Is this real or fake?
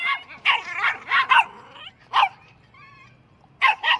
real